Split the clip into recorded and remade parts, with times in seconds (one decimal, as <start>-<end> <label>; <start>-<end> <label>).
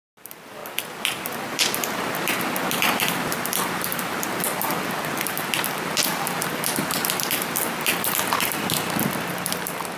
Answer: 0.0-10.0 recorded